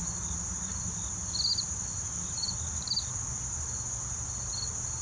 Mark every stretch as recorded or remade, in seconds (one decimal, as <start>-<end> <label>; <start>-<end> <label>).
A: 0.0-5.0 recorded